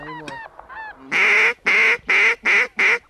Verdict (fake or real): real